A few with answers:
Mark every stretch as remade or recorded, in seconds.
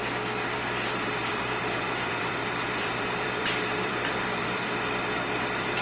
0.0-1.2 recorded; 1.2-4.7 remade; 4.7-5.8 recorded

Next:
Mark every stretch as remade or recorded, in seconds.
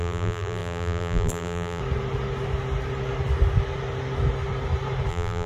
0.0-1.8 remade; 1.8-5.1 recorded; 5.1-5.5 remade